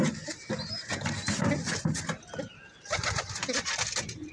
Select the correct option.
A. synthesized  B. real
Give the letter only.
B